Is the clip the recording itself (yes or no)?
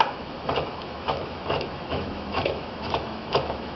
no